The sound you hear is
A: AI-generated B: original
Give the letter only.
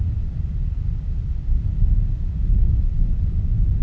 B